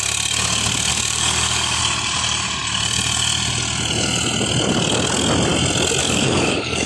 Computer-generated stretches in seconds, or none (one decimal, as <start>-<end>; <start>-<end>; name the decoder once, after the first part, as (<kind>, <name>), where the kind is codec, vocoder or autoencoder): 0.9-1.8 (codec, DAC); 6.0-6.9